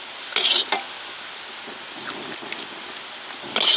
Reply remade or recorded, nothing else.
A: recorded